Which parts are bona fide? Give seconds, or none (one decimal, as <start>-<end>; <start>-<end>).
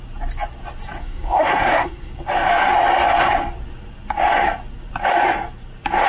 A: 0.0-1.0; 2.1-6.1